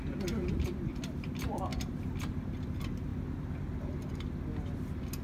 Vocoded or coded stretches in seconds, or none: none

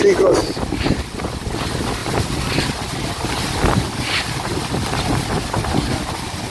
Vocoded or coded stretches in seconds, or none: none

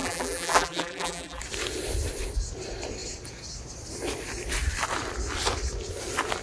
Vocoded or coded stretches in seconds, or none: 0.0-1.4

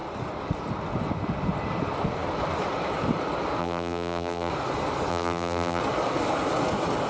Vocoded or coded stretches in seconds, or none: 3.6-4.5; 5.1-5.8

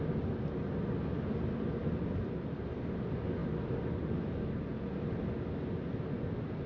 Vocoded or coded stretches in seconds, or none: 1.8-2.5

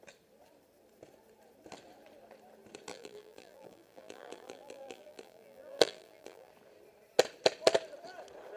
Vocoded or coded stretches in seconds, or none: 2.9-6.5

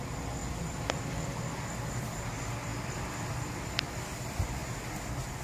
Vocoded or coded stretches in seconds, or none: 0.0-2.7; 3.3-4.6

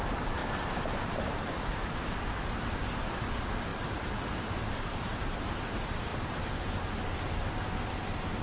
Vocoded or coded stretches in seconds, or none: 0.0-6.1; 7.9-8.4